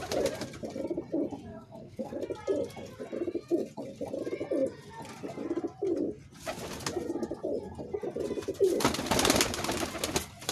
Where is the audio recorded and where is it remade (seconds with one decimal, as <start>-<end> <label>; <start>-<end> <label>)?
0.0-1.5 recorded; 1.5-2.2 remade; 2.2-10.5 recorded